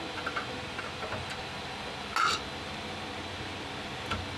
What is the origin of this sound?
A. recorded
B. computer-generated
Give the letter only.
A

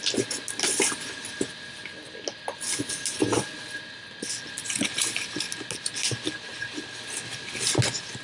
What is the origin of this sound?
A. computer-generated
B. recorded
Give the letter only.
B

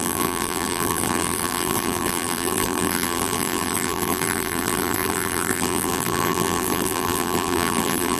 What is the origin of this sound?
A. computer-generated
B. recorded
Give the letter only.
A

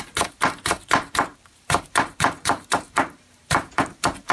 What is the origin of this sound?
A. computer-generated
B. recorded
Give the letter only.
A